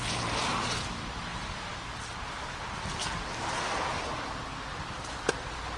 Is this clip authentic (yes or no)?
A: yes